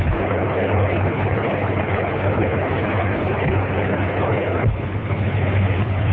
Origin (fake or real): fake